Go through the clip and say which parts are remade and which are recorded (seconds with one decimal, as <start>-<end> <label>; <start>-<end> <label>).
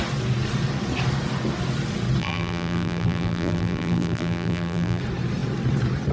0.0-2.2 recorded; 2.2-5.0 remade; 5.0-6.1 recorded